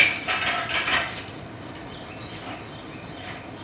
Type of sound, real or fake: real